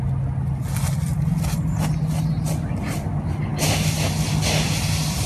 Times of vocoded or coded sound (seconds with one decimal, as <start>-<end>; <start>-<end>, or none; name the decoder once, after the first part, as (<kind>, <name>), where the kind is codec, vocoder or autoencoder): none